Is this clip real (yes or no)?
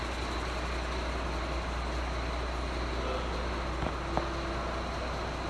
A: yes